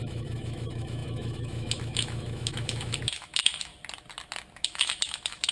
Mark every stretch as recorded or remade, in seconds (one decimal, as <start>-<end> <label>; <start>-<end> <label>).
0.0-3.7 remade; 3.7-4.5 recorded; 4.5-5.5 remade